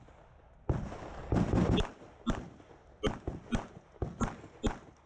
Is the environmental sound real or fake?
real